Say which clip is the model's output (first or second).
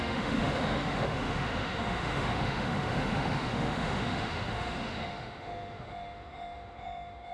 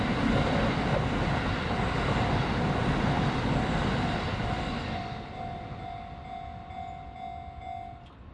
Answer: first